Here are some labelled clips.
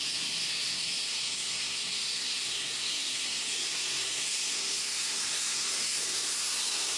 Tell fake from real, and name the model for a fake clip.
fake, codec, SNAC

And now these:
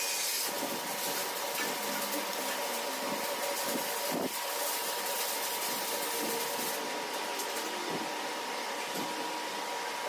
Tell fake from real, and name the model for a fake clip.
real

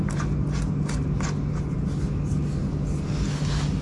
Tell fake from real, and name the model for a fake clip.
real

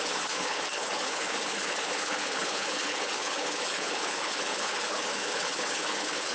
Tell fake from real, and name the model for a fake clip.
fake, codec, HILCodec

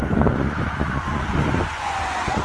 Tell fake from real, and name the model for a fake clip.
fake, vocoder, Vocos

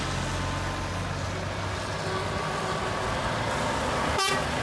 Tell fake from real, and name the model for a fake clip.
real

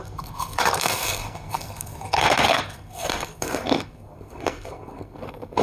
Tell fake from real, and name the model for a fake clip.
fake, codec, SNAC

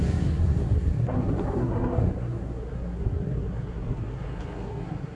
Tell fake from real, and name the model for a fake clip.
fake, codec, SNAC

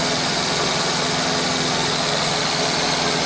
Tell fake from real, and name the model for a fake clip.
real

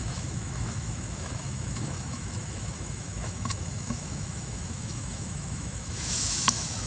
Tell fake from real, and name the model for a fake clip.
fake, autoencoder, DAC-VAE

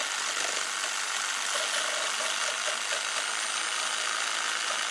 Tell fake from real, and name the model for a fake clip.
real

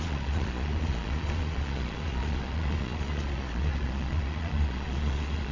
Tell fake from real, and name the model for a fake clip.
fake, vocoder, Vocos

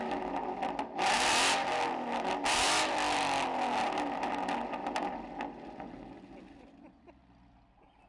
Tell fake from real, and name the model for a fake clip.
real